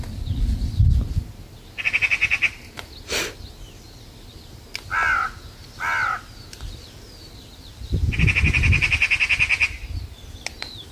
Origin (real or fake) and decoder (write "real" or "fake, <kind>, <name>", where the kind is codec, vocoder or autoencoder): real